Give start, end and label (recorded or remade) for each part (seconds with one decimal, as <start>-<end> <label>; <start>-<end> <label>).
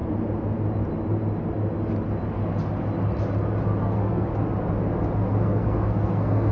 0.0-3.8 recorded; 3.8-4.3 remade; 4.3-5.3 recorded; 5.3-6.5 remade